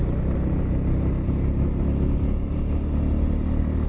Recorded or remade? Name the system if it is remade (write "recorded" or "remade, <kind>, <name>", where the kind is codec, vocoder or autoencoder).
recorded